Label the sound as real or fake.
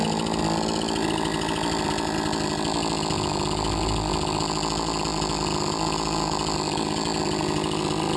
real